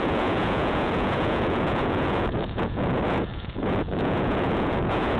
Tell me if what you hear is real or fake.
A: fake